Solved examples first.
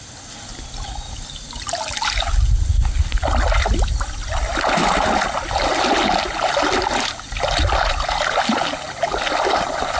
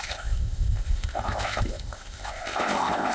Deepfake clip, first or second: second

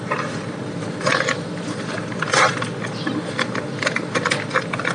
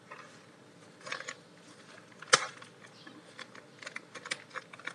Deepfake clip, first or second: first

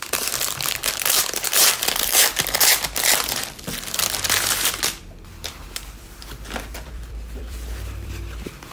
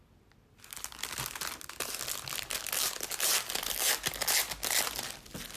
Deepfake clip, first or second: first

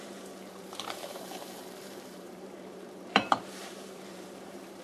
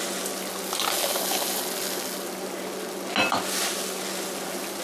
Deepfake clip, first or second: first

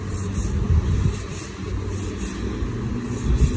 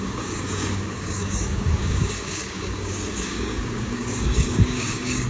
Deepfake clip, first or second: second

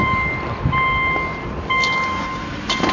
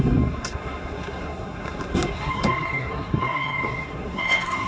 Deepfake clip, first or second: second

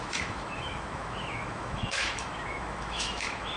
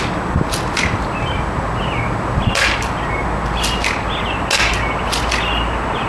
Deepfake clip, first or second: first